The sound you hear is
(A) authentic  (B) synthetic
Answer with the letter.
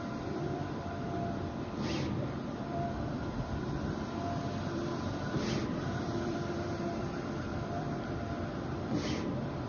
B